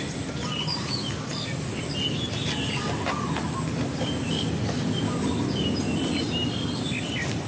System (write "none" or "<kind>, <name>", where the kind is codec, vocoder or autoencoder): none